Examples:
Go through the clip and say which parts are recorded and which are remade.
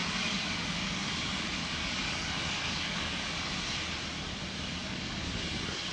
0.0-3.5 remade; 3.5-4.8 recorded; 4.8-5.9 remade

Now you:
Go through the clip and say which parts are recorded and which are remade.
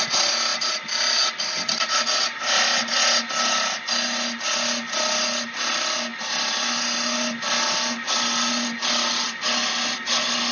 0.0-10.5 recorded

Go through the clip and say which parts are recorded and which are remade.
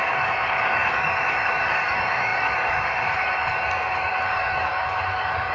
0.0-5.5 remade